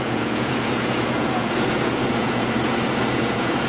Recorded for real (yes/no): no